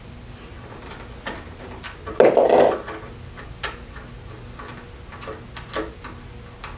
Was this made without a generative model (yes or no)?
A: yes